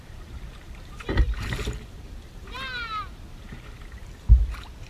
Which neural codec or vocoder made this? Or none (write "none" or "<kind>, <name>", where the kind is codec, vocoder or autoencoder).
vocoder, BigVGAN v2